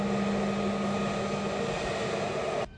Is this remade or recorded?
recorded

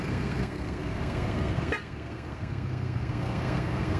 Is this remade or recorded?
remade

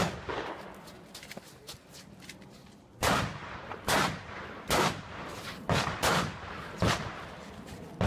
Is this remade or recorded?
recorded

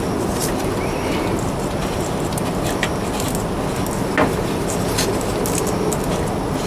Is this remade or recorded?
recorded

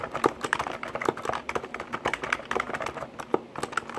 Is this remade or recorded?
recorded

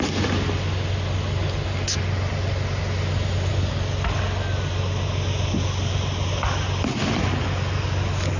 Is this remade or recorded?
recorded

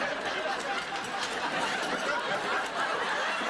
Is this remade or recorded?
recorded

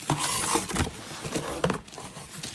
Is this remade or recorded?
recorded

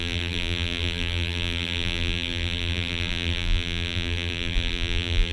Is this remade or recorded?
remade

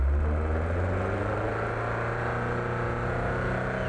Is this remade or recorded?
recorded